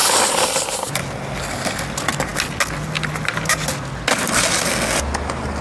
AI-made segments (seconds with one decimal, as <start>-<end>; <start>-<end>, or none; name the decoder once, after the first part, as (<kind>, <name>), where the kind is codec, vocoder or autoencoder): 0.0-1.0 (vocoder, BigVGAN v2)